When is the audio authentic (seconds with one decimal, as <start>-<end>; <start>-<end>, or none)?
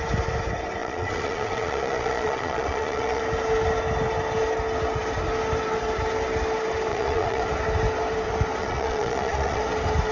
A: 0.0-0.8; 3.2-6.9; 7.4-8.6; 9.6-10.1